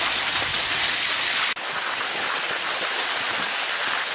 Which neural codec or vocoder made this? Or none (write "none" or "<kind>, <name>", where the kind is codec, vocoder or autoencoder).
none